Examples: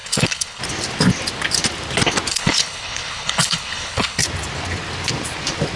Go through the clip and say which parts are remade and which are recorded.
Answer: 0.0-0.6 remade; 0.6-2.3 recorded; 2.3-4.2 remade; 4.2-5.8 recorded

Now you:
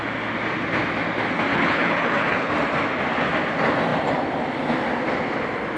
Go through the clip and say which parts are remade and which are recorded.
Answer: 0.0-1.5 recorded; 1.5-2.5 remade; 2.5-5.8 recorded

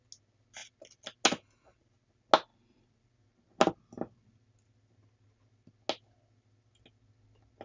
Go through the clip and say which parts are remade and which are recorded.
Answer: 0.0-7.6 recorded

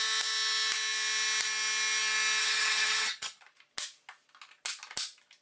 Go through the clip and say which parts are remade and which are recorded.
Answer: 0.0-2.4 recorded; 2.4-3.4 remade; 3.4-5.4 recorded

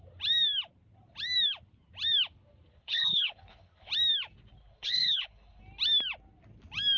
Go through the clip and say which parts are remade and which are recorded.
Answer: 0.0-2.7 recorded; 2.7-3.9 remade; 3.9-4.6 recorded; 4.6-5.6 remade; 5.6-7.0 recorded

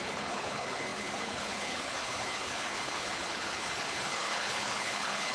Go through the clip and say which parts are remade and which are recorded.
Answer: 0.0-5.3 remade

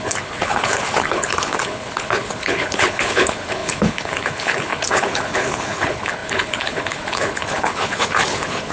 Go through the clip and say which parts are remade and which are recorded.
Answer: 0.0-8.7 remade

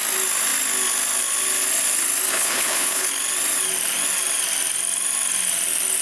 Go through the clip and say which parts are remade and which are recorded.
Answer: 0.0-2.3 recorded; 2.3-3.1 remade; 3.1-6.0 recorded